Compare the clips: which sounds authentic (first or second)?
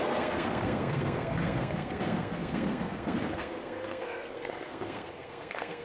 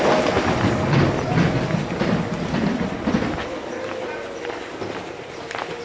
second